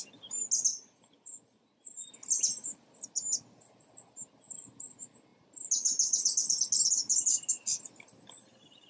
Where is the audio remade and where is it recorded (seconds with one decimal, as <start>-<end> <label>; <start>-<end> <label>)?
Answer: 0.0-0.7 recorded; 0.7-2.1 remade; 2.1-8.9 recorded